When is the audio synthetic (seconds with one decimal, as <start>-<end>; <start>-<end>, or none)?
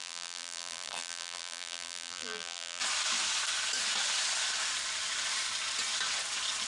0.0-2.8